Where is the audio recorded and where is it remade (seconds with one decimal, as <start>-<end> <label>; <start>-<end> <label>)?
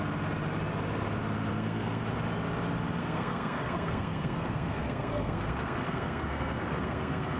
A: 0.0-1.5 recorded; 1.5-2.0 remade; 2.0-3.0 recorded; 3.0-7.4 remade